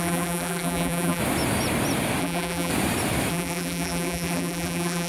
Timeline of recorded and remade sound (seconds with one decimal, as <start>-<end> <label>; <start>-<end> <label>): 0.0-1.2 remade; 1.2-2.2 recorded; 2.2-2.7 remade; 2.7-3.3 recorded; 3.3-5.1 remade